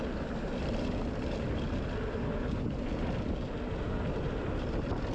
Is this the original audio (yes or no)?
yes